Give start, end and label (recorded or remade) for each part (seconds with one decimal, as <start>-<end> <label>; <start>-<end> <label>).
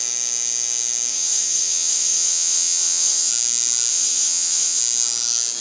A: 0.0-1.1 recorded; 1.1-3.3 remade; 3.3-3.9 recorded; 3.9-4.8 remade; 4.8-5.6 recorded